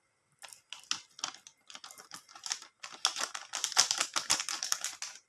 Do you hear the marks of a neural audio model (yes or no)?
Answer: no